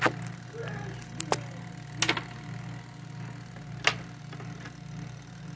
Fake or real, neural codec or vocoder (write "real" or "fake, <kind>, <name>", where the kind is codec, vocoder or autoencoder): real